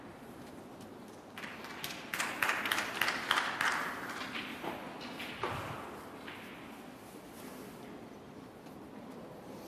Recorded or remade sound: recorded